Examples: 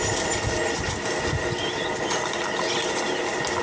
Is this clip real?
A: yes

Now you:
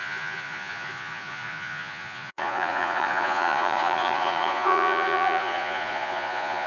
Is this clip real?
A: no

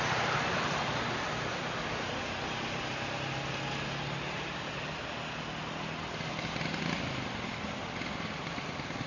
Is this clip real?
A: yes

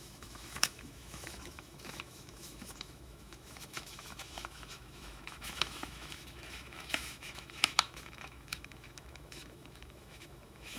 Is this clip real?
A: no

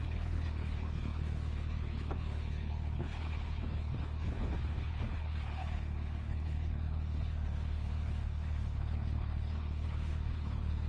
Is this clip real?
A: no